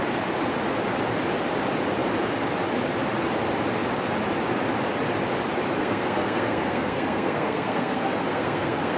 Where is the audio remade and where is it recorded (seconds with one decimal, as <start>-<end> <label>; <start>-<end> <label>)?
0.0-5.8 recorded; 5.8-9.0 remade